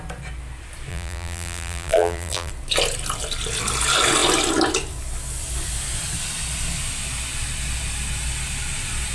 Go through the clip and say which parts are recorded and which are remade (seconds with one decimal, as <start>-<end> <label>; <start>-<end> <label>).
0.0-0.9 recorded; 0.9-2.5 remade; 2.5-9.1 recorded